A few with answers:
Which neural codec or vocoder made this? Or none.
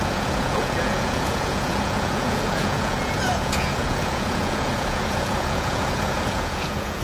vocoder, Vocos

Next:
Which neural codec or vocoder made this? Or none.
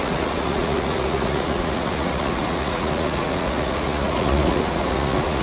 vocoder, Vocos